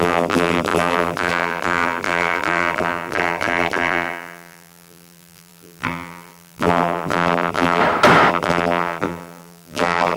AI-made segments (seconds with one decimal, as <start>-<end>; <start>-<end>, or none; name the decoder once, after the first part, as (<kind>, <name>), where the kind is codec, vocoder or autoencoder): 0.0-7.8 (vocoder, BigVGAN v2); 8.3-10.2